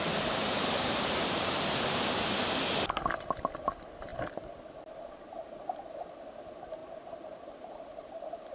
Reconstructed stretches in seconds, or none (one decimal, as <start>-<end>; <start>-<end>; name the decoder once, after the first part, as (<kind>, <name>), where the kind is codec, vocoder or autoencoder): 0.4-2.0 (vocoder, BigVGAN v2); 6.8-8.0